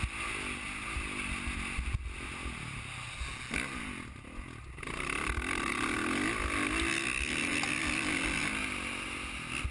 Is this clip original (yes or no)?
yes